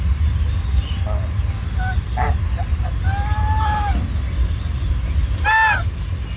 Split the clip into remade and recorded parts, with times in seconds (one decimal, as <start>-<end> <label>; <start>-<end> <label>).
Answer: 0.0-6.4 recorded